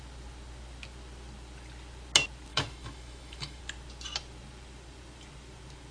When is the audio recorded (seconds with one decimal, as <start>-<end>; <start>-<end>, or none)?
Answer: 0.0-2.5; 3.6-5.9